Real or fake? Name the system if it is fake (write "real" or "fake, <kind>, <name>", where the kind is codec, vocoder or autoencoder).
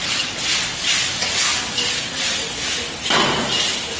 real